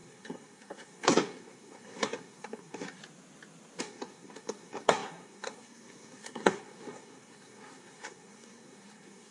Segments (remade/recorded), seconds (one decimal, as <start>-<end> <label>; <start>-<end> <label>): 0.0-3.0 remade; 3.0-3.8 recorded; 3.8-9.3 remade